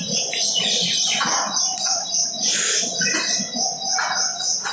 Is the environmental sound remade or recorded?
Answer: recorded